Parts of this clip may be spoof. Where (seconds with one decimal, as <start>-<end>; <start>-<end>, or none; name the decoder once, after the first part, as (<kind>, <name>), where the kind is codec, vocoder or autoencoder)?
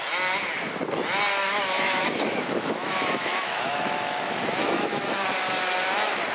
1.4-5.2 (autoencoder, DAC-VAE)